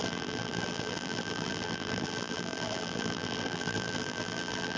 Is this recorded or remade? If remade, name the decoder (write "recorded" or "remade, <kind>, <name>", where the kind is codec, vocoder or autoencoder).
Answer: remade, vocoder, BigVGAN v2